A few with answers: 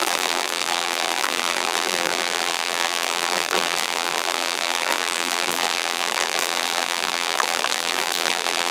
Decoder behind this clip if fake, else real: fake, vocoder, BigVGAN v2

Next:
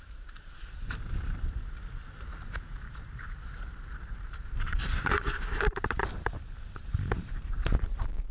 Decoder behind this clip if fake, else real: fake, vocoder, BigVGAN v2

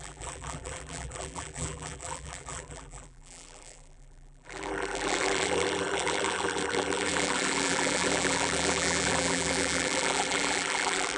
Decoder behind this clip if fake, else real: fake, vocoder, BigVGAN v2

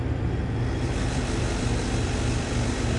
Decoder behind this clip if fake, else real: fake, vocoder, BigVGAN v2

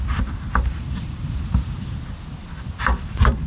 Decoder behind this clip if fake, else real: real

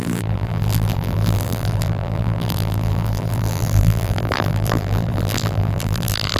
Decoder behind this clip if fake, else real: fake, vocoder, BigVGAN v2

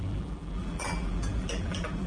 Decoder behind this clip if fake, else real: fake, vocoder, BigVGAN v2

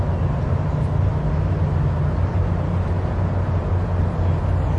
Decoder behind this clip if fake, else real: real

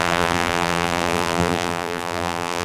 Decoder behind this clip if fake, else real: fake, vocoder, BigVGAN v2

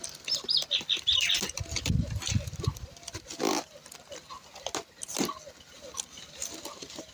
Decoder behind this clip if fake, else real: real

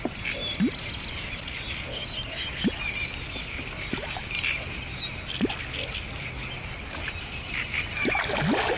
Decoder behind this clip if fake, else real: real